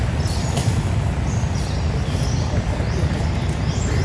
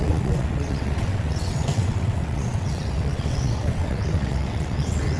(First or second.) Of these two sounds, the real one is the first